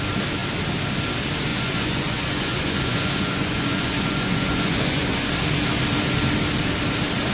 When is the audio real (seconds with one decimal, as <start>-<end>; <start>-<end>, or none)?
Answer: 0.0-1.5; 5.3-7.3